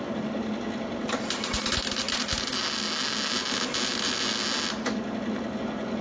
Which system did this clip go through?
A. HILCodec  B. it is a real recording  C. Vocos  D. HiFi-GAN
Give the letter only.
B